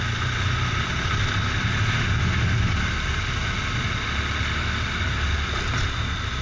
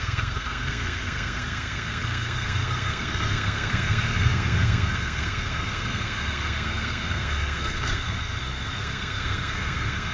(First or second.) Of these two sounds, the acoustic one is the first